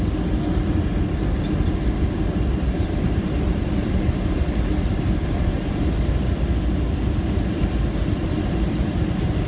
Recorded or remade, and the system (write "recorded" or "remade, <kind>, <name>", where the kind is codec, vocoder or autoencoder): recorded